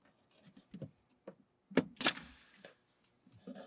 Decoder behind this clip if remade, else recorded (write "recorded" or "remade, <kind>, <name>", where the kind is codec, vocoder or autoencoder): recorded